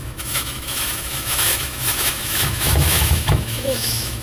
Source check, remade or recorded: remade